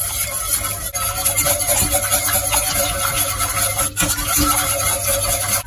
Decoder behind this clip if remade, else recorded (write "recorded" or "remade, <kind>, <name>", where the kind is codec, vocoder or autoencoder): recorded